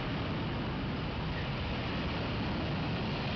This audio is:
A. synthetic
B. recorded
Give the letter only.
B